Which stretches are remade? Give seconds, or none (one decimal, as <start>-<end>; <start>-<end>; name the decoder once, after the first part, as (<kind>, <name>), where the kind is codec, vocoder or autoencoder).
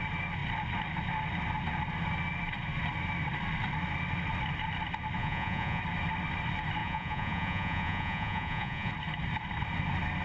5.2-5.8 (vocoder, Vocos); 6.8-8.9